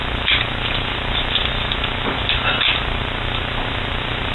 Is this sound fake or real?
real